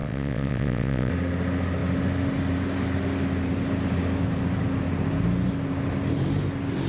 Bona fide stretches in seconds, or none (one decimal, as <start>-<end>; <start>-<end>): 1.1-6.9